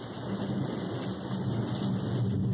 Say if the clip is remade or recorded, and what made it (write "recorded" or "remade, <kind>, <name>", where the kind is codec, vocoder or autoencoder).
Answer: recorded